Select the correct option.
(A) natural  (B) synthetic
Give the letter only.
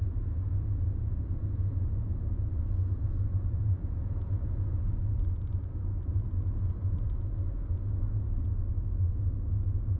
B